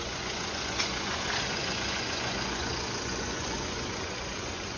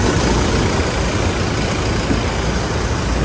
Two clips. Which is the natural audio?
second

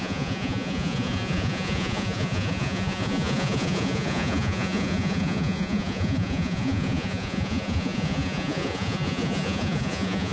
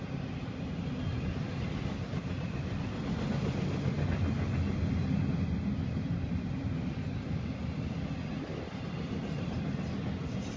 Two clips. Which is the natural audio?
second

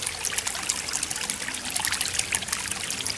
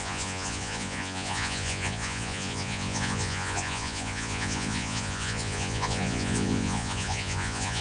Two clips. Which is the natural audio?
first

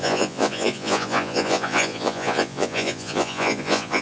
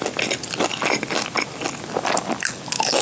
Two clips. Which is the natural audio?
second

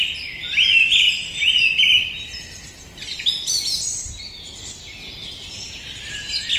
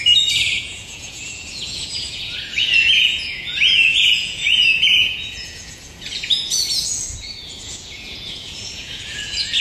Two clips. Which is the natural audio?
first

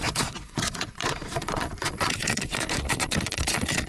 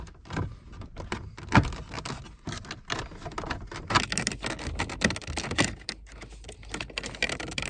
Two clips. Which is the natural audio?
second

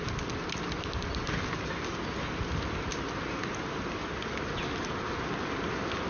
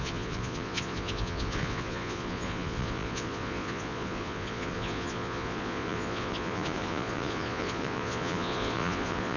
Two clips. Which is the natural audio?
first